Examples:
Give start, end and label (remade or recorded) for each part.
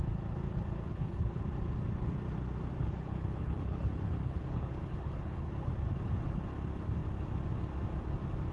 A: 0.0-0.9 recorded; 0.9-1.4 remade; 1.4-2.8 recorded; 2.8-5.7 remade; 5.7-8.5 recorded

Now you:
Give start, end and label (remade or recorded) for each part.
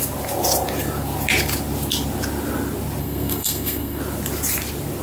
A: 0.0-3.0 recorded; 3.0-4.0 remade; 4.0-5.0 recorded